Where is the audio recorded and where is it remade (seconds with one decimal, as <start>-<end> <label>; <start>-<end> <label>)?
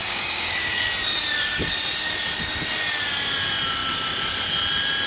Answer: 0.0-0.9 remade; 0.9-5.1 recorded